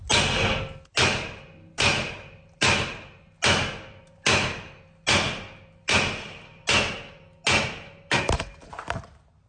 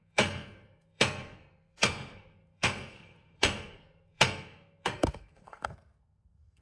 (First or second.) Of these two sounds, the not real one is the second